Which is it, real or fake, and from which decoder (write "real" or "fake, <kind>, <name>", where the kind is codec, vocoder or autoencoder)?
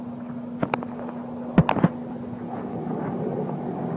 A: real